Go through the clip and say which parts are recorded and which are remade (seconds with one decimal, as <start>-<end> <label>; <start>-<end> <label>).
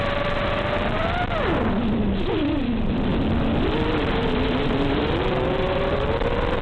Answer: 0.0-6.6 recorded